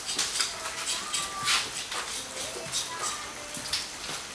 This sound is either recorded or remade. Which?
recorded